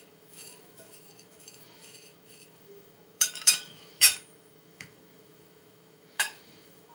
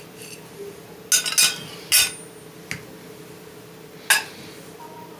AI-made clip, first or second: first